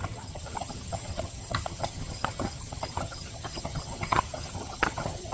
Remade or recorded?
remade